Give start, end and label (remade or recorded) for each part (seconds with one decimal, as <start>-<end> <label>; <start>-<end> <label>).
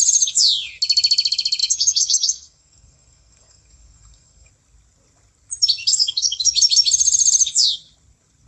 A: 0.0-1.6 recorded; 1.6-4.5 remade; 4.5-5.9 recorded; 5.9-6.4 remade; 6.4-8.5 recorded